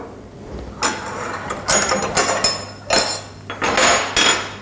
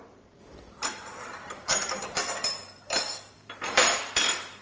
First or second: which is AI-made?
second